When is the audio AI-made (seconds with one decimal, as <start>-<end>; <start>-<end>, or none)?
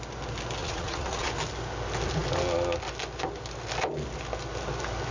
0.6-1.3